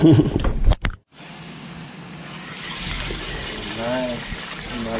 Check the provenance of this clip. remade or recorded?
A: recorded